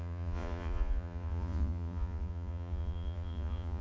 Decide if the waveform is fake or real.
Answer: fake